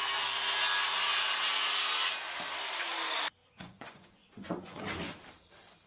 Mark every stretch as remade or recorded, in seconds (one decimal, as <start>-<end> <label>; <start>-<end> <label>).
0.0-3.4 recorded; 3.4-4.8 remade; 4.8-5.9 recorded